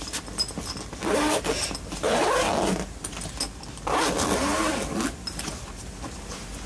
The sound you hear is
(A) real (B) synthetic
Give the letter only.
A